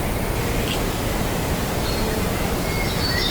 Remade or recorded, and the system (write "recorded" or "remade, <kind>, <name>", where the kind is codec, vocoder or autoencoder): recorded